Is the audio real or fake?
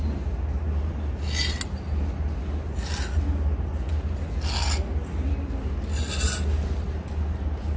real